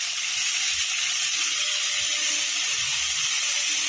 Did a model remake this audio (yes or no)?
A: no